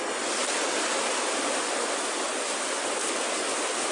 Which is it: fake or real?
real